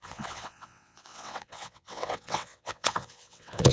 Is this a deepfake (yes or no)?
yes